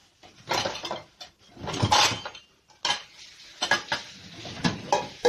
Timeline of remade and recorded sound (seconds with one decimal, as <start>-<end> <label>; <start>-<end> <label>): 0.0-5.3 recorded